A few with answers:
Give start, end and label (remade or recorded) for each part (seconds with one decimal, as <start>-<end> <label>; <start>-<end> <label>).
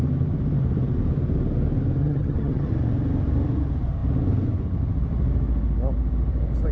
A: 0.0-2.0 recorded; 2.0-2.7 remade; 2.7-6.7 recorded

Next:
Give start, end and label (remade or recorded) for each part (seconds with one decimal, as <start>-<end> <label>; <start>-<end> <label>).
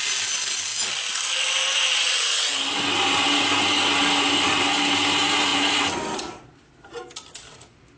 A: 0.0-8.0 recorded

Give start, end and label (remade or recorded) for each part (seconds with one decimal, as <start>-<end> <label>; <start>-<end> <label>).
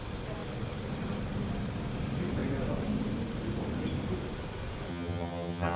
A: 0.0-4.9 recorded; 4.9-5.8 remade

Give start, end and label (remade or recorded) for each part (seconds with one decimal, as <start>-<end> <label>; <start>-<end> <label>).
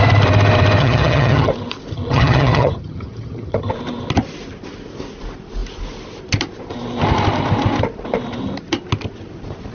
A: 0.0-0.8 recorded; 0.8-1.5 remade; 1.5-1.9 recorded; 1.9-3.7 remade; 3.7-9.7 recorded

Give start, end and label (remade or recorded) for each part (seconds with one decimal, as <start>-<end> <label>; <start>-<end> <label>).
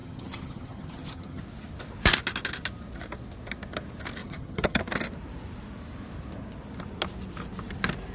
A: 0.0-1.4 remade; 1.4-4.2 recorded; 4.2-4.8 remade; 4.8-8.1 recorded